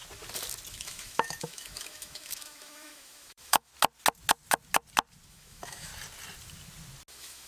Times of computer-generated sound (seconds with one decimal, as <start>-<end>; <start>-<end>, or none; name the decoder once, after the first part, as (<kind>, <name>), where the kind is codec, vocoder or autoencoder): 0.7-3.7 (autoencoder, DAC-VAE); 5.3-5.9; 7.1-7.5